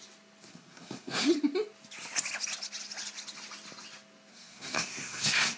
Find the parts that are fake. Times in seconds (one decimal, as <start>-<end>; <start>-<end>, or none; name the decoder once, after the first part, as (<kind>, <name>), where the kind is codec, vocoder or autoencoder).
0.5-1.4 (codec, SNAC); 4.3-5.6